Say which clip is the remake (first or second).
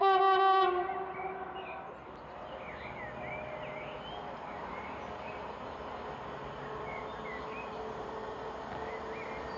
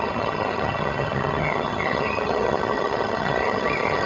second